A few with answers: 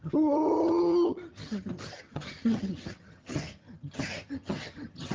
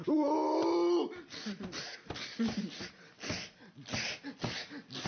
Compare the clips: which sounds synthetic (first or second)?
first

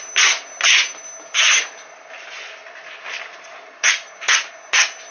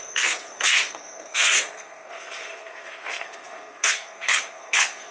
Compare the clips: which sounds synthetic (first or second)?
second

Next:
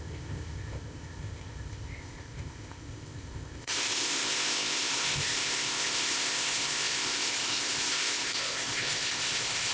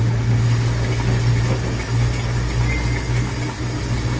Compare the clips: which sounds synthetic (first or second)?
first